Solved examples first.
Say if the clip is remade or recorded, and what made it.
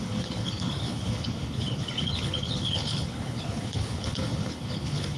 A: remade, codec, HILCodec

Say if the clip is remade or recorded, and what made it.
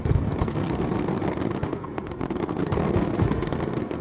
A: remade, codec, SNAC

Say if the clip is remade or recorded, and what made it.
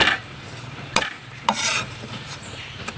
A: remade, vocoder, BigVGAN v2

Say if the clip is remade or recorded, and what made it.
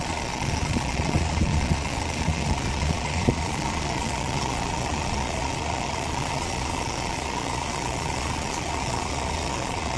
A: remade, vocoder, Vocos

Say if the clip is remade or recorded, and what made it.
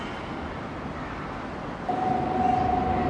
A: recorded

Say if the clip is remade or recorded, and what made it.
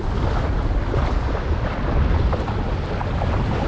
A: recorded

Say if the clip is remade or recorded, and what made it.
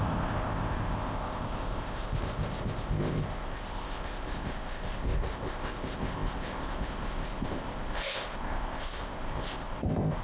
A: remade, codec, ZipCodec